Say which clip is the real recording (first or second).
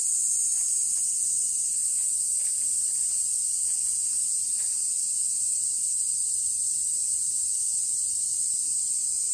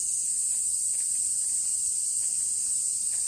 first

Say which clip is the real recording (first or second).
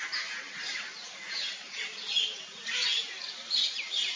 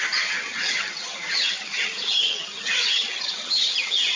first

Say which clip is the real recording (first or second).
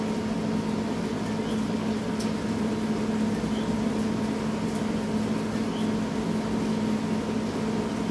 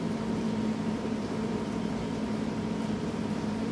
first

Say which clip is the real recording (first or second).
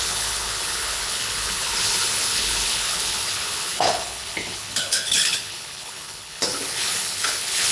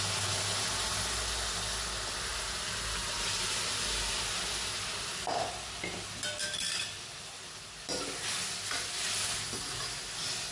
second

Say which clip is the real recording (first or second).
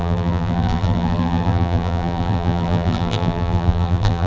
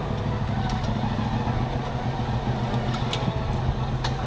second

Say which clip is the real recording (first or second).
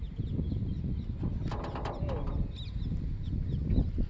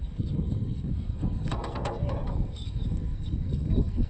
first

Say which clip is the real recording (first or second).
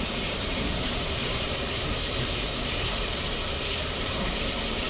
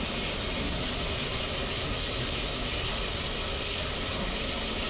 second